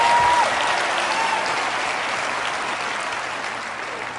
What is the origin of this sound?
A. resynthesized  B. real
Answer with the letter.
B